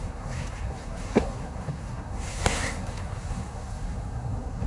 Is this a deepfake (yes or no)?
yes